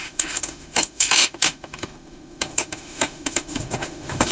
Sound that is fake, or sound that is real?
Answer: fake